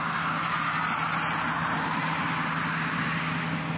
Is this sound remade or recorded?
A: recorded